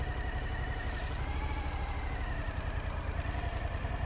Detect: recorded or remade recorded